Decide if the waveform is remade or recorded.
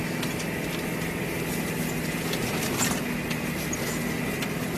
recorded